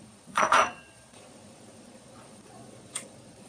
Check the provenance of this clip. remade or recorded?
remade